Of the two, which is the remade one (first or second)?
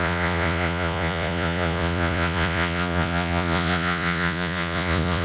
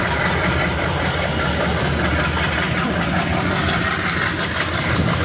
first